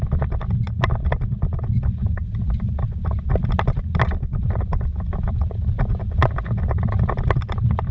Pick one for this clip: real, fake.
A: real